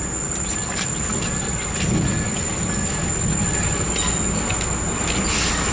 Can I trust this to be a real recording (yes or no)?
yes